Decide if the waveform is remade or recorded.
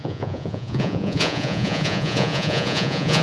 remade